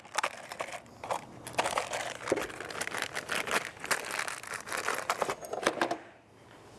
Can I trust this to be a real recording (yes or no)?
yes